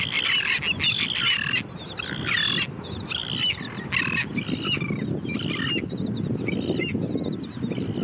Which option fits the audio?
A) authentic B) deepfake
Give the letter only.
A